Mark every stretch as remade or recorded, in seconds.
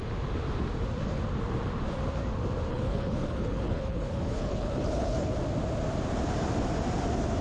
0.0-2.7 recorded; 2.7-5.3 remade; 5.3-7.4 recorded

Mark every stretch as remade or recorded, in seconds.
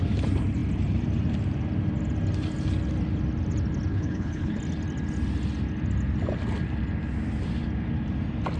0.0-3.9 recorded; 3.9-4.6 remade; 4.6-8.6 recorded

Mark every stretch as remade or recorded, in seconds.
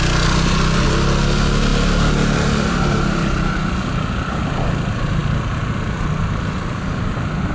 0.0-7.5 recorded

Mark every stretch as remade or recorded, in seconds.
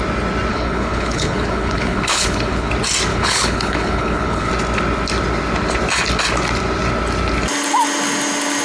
0.0-0.5 recorded; 0.5-2.7 remade; 2.7-3.1 recorded; 3.1-4.5 remade; 4.5-8.6 recorded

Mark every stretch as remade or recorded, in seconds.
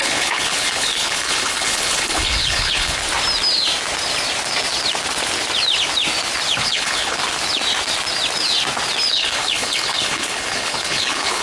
0.0-3.0 remade; 3.0-6.6 recorded; 6.6-7.2 remade; 7.2-9.1 recorded; 9.1-11.4 remade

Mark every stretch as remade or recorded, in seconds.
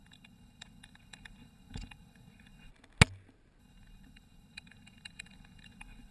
0.0-2.7 remade; 2.7-3.6 recorded; 3.6-6.1 remade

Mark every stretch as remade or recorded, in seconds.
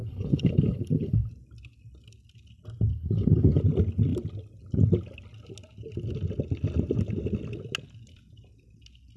0.0-1.3 remade; 1.3-2.9 recorded; 2.9-3.6 remade; 3.6-9.2 recorded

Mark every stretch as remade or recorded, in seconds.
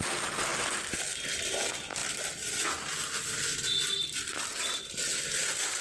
0.0-5.8 recorded